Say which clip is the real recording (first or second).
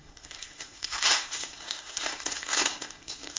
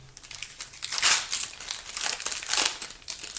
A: second